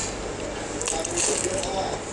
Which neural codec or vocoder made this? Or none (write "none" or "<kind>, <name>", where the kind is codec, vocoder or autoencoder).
none